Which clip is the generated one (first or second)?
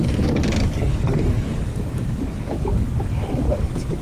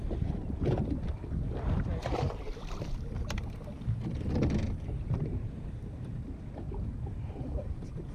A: first